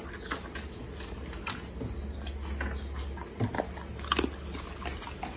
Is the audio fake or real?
real